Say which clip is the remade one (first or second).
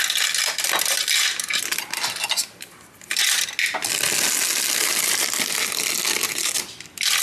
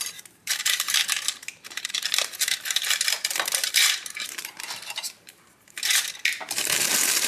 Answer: second